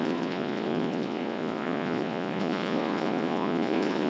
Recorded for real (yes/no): no